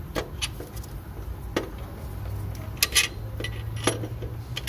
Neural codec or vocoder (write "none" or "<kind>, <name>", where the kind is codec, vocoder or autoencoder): none